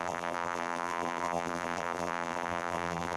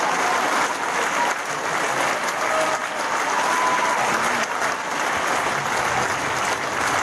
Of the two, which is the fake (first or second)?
first